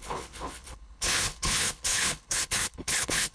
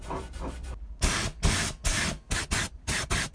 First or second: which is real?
second